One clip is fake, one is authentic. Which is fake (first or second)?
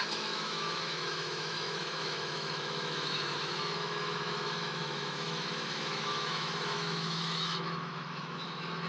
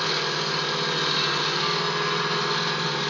first